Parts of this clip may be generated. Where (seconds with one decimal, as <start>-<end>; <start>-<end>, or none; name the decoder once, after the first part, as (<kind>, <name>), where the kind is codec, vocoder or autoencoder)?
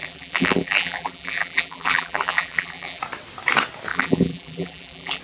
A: 0.0-3.0 (vocoder, BigVGAN v2); 3.9-5.2